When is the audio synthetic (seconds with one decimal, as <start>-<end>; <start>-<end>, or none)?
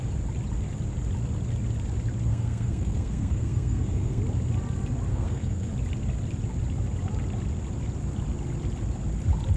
2.3-4.2; 5.1-5.7